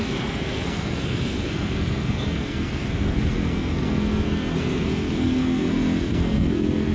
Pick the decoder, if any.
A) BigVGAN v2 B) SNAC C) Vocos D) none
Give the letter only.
B